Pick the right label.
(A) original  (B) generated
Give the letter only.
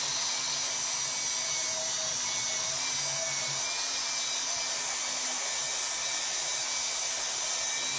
A